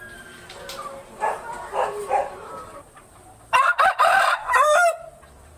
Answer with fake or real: fake